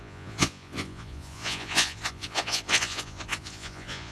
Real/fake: fake